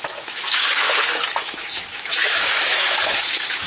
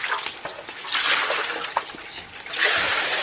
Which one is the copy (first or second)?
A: first